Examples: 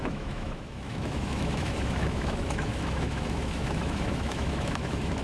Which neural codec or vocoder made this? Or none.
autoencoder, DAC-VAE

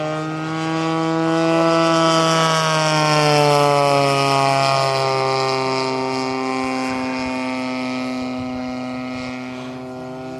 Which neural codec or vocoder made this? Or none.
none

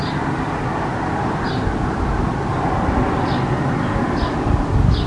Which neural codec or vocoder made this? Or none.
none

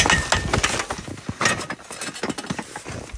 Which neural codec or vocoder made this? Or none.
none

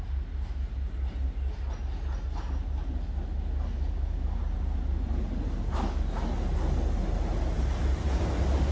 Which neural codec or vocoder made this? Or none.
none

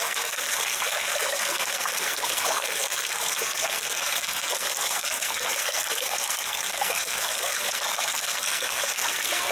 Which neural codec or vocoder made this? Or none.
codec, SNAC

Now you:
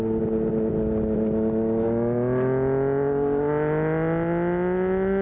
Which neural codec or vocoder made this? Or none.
none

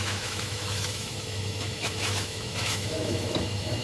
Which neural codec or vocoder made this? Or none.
autoencoder, DAC-VAE